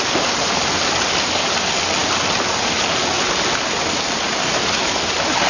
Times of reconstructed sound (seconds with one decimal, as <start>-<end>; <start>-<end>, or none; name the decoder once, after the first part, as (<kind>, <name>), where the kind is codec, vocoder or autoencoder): none